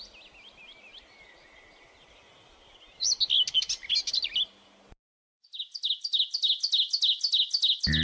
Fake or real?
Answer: real